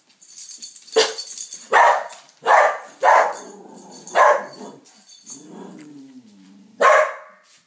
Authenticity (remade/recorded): recorded